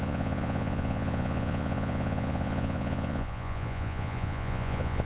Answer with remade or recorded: remade